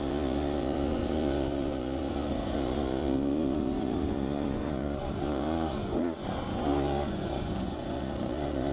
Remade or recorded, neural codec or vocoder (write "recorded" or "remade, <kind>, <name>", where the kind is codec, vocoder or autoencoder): remade, vocoder, Vocos